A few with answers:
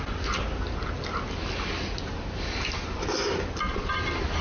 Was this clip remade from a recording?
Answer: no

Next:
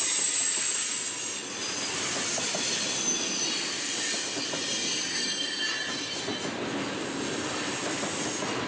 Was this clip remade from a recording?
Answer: no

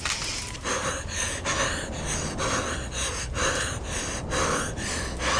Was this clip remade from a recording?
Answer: no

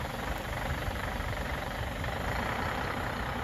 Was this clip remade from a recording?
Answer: yes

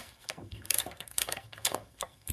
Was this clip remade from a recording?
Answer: yes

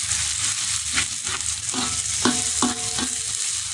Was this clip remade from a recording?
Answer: no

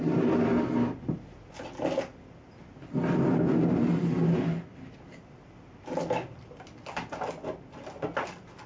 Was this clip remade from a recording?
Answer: no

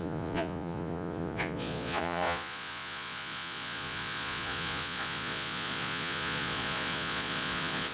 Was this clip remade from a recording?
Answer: yes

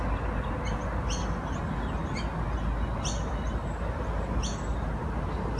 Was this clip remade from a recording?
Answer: no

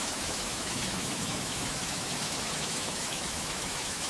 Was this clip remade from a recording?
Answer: yes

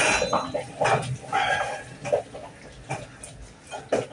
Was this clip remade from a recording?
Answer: no